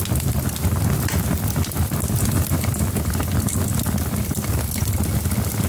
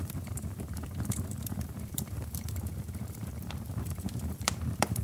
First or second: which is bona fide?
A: first